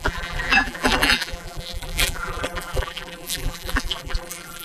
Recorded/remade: remade